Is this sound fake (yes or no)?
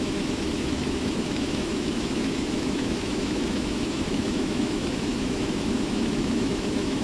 yes